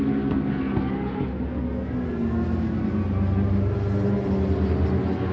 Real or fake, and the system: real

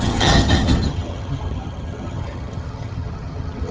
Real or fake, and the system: fake, vocoder, HiFi-GAN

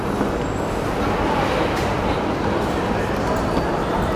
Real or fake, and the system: real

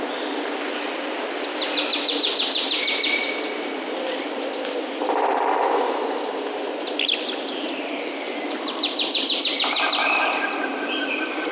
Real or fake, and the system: fake, vocoder, BigVGAN v2